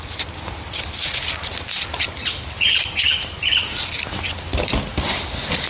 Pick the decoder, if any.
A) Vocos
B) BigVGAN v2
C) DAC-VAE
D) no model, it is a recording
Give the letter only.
D